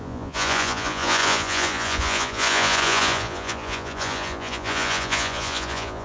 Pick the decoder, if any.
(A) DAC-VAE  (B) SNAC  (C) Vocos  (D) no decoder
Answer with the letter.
C